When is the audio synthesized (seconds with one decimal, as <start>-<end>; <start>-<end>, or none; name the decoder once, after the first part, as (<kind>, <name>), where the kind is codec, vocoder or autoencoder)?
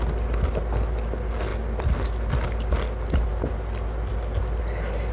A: none